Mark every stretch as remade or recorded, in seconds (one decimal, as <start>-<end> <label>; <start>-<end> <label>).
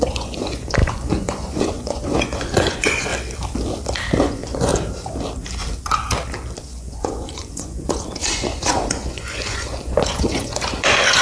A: 0.0-3.1 remade; 3.1-4.2 recorded; 4.2-4.7 remade; 4.7-6.6 recorded; 6.6-11.2 remade